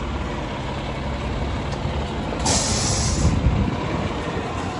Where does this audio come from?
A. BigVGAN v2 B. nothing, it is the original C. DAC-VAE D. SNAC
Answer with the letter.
B